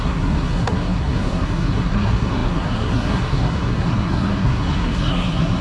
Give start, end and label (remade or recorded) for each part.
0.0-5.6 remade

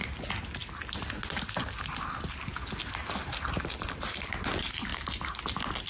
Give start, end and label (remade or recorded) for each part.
0.0-5.9 recorded

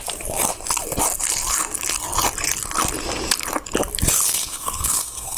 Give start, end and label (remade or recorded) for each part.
0.0-4.3 recorded; 4.3-5.4 remade

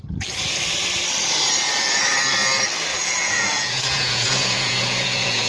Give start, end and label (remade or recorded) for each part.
0.0-2.9 recorded; 2.9-5.5 remade